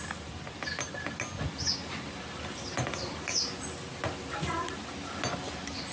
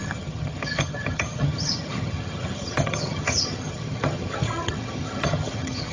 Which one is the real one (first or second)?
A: first